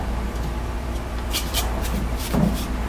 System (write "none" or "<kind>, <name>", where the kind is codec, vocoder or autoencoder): vocoder, BigVGAN v2